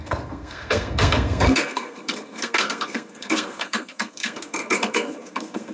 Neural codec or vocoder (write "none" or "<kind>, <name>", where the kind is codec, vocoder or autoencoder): codec, SNAC